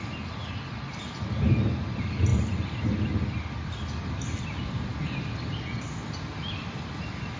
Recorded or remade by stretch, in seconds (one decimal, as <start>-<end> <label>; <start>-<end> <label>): 0.0-7.4 recorded